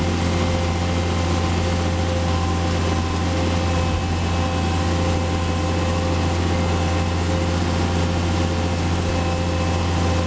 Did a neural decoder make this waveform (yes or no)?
no